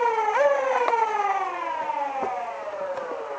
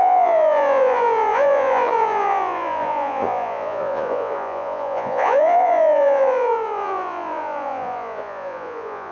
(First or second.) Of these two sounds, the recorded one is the first